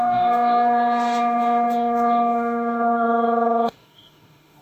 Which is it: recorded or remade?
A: remade